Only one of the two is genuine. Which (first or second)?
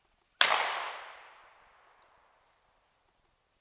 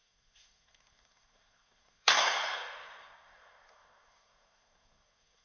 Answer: first